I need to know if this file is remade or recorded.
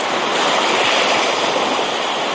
recorded